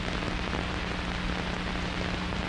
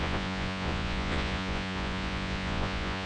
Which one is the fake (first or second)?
second